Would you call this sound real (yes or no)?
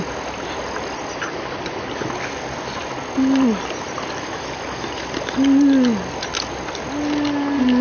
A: yes